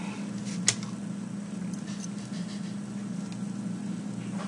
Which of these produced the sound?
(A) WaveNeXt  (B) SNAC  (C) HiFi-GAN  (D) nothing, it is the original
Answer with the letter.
D